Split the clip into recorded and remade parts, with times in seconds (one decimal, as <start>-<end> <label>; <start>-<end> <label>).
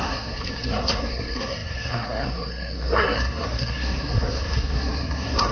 0.0-5.5 remade